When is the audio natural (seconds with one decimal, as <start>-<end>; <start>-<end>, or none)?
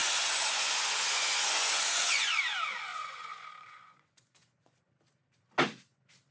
2.3-2.9; 4.9-6.3